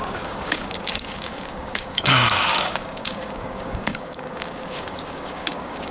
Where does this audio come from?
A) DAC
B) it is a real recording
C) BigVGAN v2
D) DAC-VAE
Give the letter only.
A